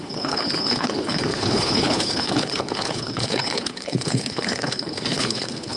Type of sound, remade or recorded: remade